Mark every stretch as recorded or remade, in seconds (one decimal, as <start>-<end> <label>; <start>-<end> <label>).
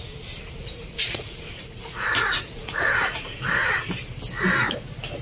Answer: 0.0-0.6 recorded; 0.6-3.7 remade; 3.7-5.2 recorded